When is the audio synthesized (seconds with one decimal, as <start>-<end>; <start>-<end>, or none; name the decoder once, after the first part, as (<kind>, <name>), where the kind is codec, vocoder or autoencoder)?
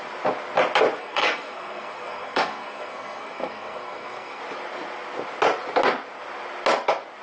1.0-4.4 (codec, SNAC)